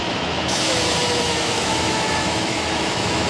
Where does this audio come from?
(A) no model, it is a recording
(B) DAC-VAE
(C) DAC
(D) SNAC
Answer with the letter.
B